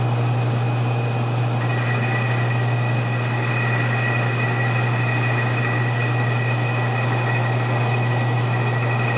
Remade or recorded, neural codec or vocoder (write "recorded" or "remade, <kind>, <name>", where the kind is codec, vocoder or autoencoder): recorded